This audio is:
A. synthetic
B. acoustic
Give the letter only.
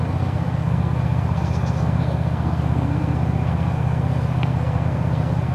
A